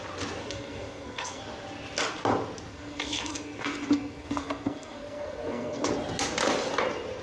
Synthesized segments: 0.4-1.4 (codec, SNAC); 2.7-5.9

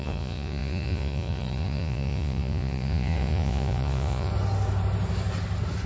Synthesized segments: 0.0-4.3 (vocoder, Vocos)

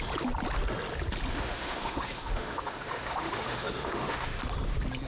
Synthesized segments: 1.3-4.4 (autoencoder, DAC-VAE)

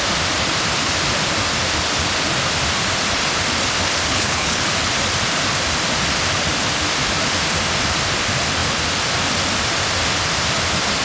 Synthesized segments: 4.1-4.6 (codec, HILCodec)

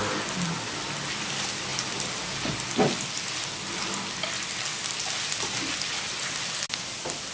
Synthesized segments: none

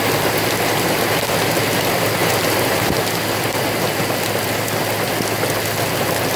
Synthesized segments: 2.2-2.9 (vocoder, BigVGAN v2)

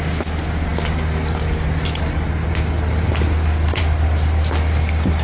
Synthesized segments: none

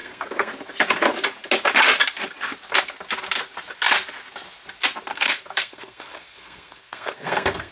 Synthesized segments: 0.0-0.5 (codec, SNAC); 5.1-7.7